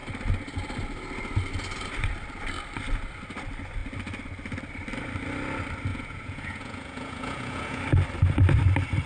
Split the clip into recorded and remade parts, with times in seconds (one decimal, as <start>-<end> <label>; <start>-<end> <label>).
0.0-5.9 recorded; 5.9-7.8 remade; 7.8-9.1 recorded